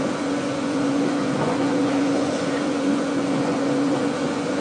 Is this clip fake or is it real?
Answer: fake